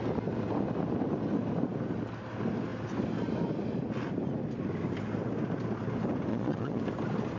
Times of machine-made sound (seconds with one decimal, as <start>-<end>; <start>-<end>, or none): 6.3-6.8